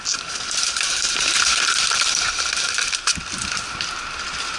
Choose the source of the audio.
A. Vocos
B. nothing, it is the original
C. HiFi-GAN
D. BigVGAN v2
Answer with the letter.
B